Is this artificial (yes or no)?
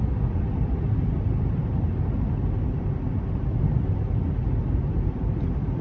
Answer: no